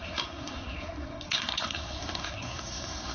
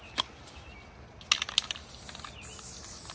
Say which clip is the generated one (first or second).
first